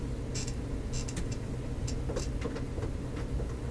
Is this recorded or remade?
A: recorded